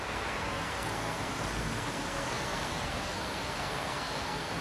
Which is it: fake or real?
fake